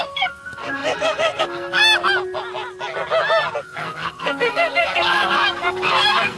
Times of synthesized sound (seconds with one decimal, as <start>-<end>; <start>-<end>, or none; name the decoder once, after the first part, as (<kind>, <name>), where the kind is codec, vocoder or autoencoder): 0.0-1.8 (codec, SNAC); 3.6-6.4